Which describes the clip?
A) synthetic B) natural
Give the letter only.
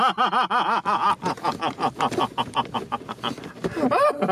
B